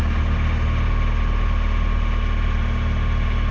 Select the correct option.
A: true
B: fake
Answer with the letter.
A